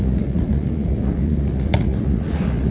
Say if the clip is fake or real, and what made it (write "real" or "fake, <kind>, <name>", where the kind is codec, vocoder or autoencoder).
fake, vocoder, Vocos